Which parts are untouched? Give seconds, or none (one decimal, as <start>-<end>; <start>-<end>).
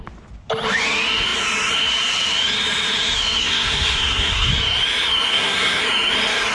0.0-3.4; 4.5-5.3; 5.8-6.5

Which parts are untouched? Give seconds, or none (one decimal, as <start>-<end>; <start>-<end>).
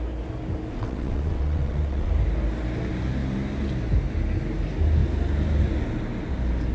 0.0-0.7; 2.1-6.7